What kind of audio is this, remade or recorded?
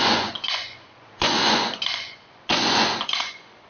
remade